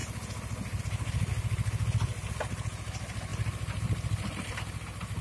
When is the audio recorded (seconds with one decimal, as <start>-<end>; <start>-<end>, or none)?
0.0-5.2